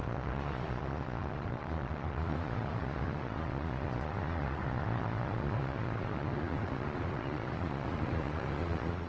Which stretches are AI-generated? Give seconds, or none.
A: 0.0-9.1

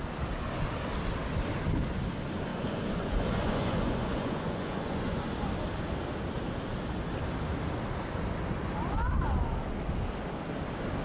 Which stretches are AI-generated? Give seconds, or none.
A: 2.5-5.5

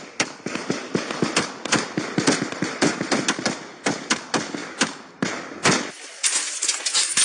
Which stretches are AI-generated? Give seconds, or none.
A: none

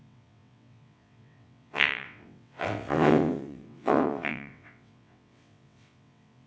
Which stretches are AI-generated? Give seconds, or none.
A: 0.0-6.5